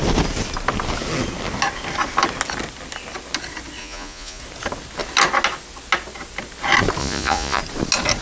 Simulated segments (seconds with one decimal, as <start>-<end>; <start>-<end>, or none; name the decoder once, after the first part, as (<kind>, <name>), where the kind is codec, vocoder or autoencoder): 3.8-4.4 (vocoder, Vocos); 7.0-7.6